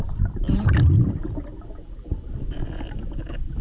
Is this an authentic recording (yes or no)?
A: yes